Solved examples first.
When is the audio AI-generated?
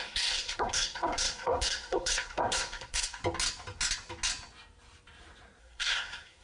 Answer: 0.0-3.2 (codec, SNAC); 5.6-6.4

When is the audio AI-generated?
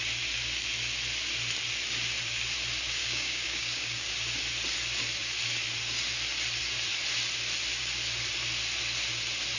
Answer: 3.0-4.1 (codec, DAC)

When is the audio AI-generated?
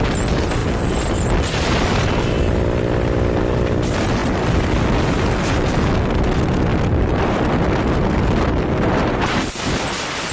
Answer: 0.6-2.1 (vocoder, BigVGAN v2); 6.7-7.5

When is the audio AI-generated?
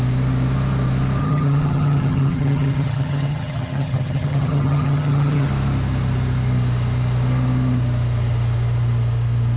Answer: 1.2-5.5 (vocoder, HiFi-GAN)